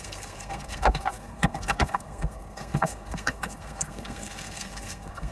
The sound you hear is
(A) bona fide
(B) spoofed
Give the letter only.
B